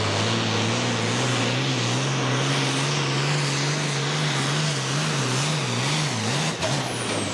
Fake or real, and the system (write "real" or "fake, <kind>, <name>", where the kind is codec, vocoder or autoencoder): real